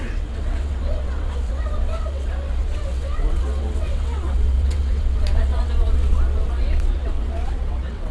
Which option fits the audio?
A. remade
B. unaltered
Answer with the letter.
A